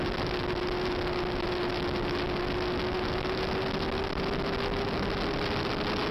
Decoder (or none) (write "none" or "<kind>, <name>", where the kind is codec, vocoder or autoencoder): none